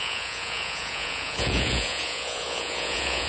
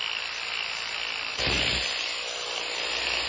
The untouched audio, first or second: second